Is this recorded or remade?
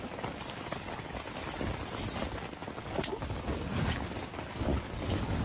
recorded